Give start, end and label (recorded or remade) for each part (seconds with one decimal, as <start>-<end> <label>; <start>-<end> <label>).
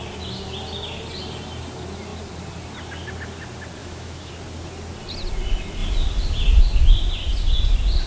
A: 0.0-3.8 recorded; 3.8-4.3 remade; 4.3-8.1 recorded